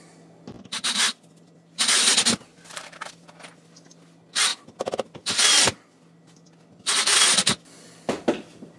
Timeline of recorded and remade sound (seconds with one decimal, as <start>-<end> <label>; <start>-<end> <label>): 0.0-2.5 recorded; 2.5-3.1 remade; 3.1-8.8 recorded